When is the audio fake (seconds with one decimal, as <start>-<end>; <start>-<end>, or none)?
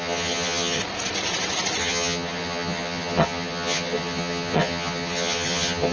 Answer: 0.0-0.8; 1.8-5.9